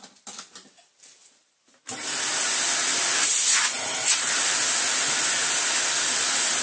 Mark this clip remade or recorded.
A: recorded